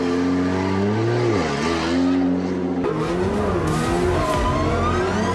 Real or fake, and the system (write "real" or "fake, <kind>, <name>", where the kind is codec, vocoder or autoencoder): real